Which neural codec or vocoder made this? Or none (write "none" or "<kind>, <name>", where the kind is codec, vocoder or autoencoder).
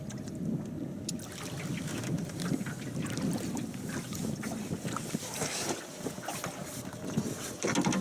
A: none